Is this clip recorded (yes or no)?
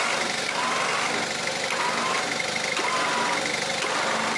yes